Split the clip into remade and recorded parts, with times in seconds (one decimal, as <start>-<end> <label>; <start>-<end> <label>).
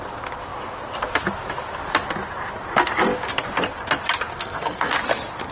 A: 0.0-4.3 recorded; 4.3-4.9 remade; 4.9-5.5 recorded